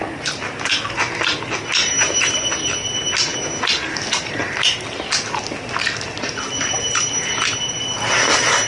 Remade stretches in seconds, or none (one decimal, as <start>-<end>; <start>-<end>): none